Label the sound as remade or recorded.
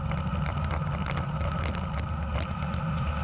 recorded